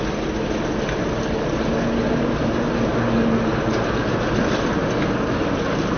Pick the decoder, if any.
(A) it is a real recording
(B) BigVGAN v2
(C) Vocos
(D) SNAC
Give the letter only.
A